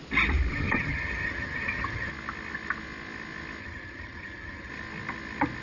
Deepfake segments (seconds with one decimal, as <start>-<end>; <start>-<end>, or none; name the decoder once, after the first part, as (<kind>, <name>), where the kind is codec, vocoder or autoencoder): 0.5-2.1 (vocoder, HiFi-GAN); 3.6-4.7